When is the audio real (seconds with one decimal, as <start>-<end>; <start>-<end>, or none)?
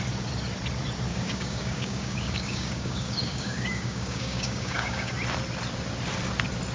0.0-1.1; 5.1-6.7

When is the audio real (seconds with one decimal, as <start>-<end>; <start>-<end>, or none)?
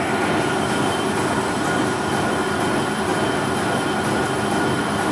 0.0-5.1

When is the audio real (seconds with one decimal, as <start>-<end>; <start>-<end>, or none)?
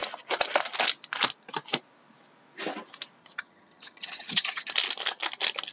0.0-3.2; 4.7-5.7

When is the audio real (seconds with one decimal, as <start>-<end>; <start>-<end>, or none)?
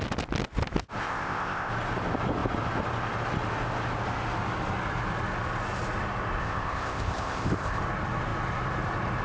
0.0-1.0; 1.7-6.4; 7.8-9.2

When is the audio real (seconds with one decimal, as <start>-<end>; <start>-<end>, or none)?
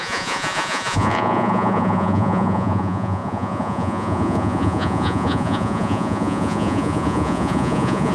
none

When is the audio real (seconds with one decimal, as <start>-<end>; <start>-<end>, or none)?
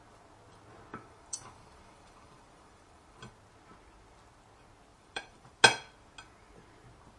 0.0-0.9; 3.3-4.9; 5.6-7.2